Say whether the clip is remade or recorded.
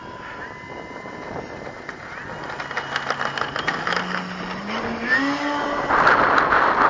recorded